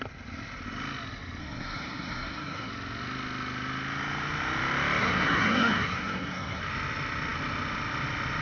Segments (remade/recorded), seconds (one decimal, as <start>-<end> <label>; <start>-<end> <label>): 0.0-1.4 recorded; 1.4-2.7 remade; 2.7-5.0 recorded; 5.0-6.6 remade; 6.6-8.4 recorded